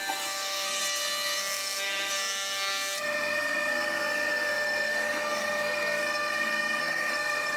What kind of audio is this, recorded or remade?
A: remade